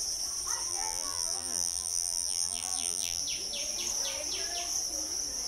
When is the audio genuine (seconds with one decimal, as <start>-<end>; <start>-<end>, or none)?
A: 0.0-0.7; 3.2-5.5